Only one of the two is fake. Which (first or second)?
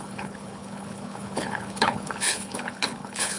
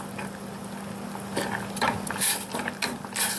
first